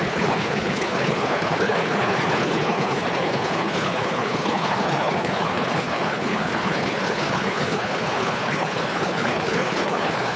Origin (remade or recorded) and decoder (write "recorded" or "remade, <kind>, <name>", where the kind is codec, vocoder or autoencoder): remade, codec, HILCodec